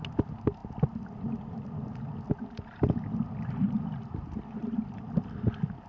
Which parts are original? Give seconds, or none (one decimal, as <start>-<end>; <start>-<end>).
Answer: 0.0-5.9

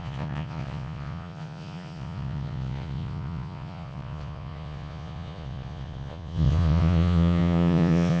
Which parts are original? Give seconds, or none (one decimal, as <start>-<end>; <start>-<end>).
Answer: none

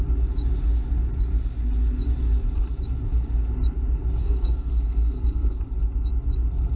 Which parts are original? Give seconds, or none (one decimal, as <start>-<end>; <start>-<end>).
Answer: 0.0-4.2; 5.6-6.8

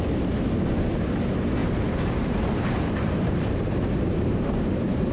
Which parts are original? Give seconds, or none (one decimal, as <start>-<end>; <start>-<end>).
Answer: 0.0-1.6